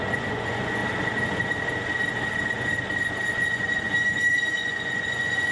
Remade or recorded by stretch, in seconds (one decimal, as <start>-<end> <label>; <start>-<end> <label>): 0.0-0.8 remade; 0.8-3.3 recorded; 3.3-5.5 remade